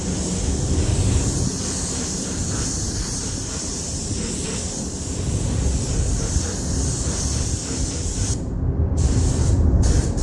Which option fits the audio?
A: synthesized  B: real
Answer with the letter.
A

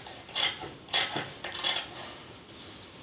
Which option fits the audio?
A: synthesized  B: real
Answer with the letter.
B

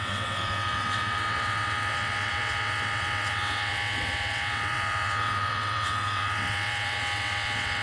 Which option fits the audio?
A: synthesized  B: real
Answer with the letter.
A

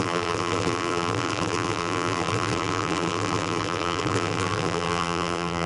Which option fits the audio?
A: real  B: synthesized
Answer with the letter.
B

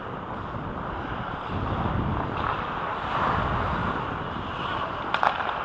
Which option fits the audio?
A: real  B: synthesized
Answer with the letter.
A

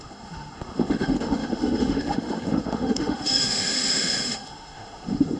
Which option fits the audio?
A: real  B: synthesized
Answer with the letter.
B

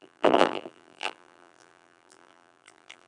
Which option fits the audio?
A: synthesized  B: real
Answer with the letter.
A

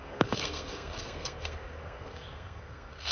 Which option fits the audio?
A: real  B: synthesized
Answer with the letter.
B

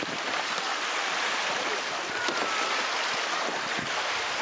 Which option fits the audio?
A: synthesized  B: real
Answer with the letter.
B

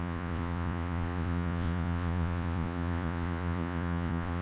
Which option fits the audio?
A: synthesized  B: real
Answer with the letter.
A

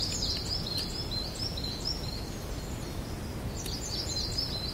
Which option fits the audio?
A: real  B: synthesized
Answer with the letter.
A